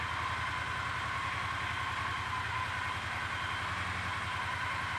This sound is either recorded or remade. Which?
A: recorded